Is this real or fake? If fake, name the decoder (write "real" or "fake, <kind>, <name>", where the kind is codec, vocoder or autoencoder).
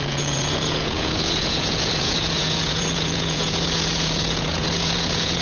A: fake, vocoder, Vocos